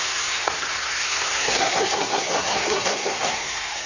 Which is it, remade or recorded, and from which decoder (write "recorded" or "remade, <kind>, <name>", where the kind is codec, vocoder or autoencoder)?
remade, codec, SNAC